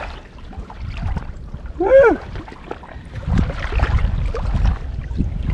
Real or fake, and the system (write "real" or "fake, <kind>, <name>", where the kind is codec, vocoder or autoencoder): real